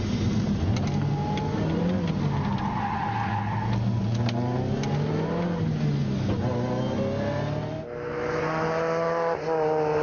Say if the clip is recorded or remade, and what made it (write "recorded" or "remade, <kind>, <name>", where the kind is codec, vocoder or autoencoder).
recorded